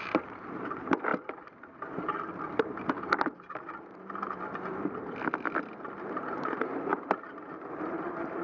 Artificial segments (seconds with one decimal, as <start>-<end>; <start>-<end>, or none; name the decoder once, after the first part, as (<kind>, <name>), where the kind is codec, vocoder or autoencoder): 0.0-1.1 (vocoder, BigVGAN v2); 6.0-8.4